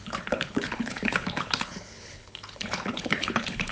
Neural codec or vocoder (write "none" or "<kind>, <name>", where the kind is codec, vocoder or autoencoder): codec, HILCodec